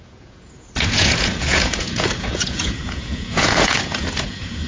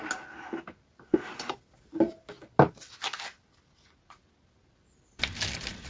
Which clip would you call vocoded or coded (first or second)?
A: first